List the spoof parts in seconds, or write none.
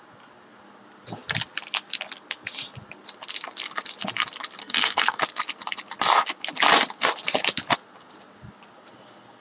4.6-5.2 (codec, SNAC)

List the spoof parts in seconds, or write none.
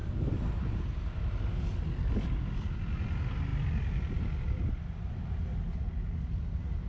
none